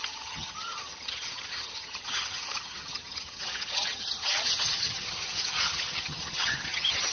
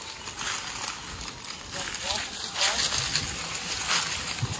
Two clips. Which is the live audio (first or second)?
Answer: second